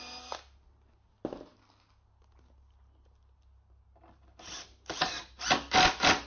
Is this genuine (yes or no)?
yes